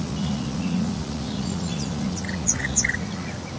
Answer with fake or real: fake